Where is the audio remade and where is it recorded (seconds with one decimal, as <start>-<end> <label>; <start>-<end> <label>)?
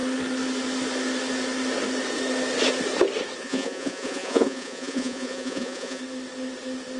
0.0-3.4 recorded; 3.4-6.0 remade; 6.0-7.0 recorded